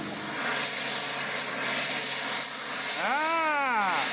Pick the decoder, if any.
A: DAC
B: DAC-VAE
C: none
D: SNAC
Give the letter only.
C